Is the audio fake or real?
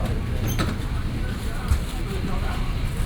real